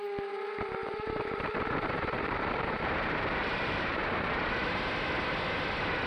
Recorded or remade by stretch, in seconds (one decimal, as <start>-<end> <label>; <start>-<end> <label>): 0.0-0.8 recorded; 0.8-4.5 remade; 4.5-6.1 recorded